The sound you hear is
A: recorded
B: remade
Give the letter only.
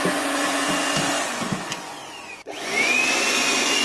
B